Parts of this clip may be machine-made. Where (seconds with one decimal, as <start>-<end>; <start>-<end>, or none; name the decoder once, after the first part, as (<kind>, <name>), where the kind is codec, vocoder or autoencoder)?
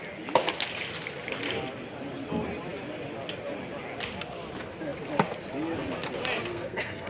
6.5-7.1 (codec, SNAC)